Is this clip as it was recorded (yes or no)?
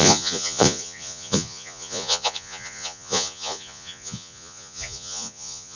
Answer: no